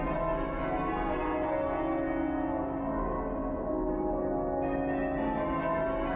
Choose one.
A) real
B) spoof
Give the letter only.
A